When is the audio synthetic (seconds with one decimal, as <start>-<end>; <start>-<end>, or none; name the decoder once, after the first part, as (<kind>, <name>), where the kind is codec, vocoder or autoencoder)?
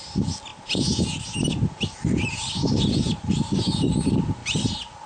none